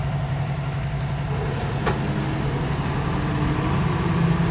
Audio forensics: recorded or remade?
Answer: recorded